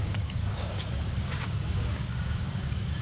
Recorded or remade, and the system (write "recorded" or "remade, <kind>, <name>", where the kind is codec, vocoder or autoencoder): remade, codec, DAC